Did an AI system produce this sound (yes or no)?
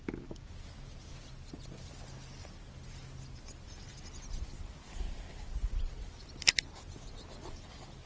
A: no